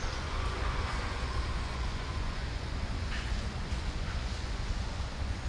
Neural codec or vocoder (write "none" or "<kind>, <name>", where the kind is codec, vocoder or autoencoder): vocoder, Vocos